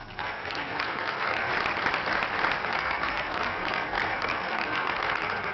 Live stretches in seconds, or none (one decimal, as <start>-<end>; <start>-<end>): 1.5-2.6

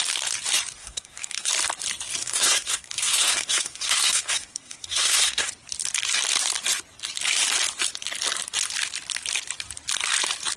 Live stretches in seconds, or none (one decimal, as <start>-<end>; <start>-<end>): 0.0-0.8; 1.5-2.2; 5.5-10.6